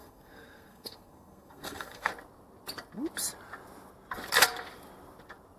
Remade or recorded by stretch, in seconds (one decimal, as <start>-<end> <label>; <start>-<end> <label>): 0.0-2.1 remade; 2.1-5.6 recorded